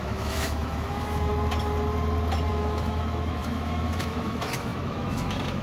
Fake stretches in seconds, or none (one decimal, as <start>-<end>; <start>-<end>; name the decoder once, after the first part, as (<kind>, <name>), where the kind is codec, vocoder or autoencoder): 0.0-1.3 (autoencoder, DAC-VAE); 2.5-5.6